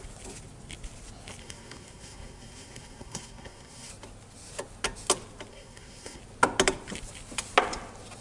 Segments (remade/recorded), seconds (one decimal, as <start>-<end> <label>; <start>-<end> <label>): 0.0-1.4 recorded; 1.4-3.9 remade; 3.9-5.5 recorded; 5.5-6.2 remade; 6.2-8.2 recorded